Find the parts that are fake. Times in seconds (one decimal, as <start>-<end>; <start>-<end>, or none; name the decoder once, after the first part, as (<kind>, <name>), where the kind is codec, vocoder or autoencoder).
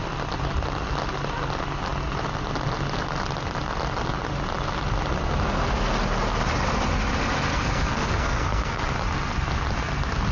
7.5-8.8 (codec, SNAC)